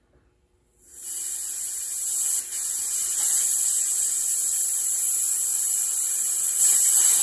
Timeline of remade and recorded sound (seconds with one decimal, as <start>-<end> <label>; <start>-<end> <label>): 0.0-7.2 recorded

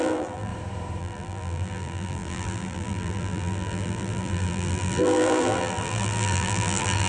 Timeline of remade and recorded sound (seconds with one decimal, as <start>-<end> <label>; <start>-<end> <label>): 0.0-0.5 remade; 0.5-1.0 recorded; 1.0-7.1 remade

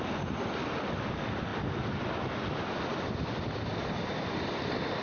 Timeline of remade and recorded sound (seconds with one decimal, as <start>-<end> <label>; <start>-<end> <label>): 0.0-1.5 recorded; 1.5-2.6 remade; 2.6-3.7 recorded; 3.7-4.4 remade; 4.4-5.0 recorded